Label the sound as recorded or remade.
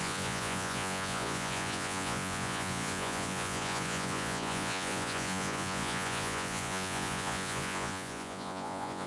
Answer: remade